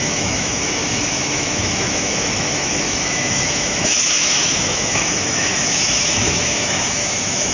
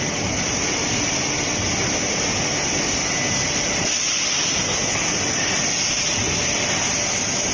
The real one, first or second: second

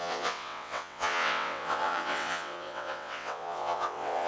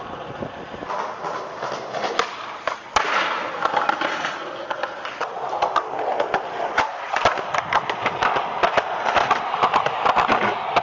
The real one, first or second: second